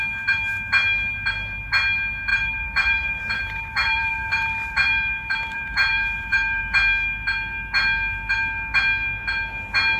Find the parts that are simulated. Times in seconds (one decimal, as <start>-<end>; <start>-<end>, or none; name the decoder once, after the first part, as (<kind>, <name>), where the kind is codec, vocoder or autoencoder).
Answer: 2.3-6.6 (vocoder, BigVGAN v2)